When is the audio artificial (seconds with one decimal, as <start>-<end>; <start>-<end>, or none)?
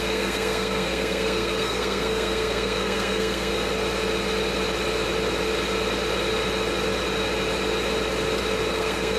0.0-3.5; 8.7-9.2